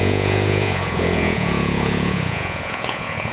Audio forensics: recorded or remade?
remade